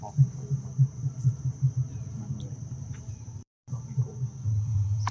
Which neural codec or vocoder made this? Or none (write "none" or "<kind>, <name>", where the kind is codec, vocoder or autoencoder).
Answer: vocoder, BigVGAN v2